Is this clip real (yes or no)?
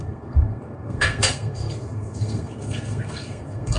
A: no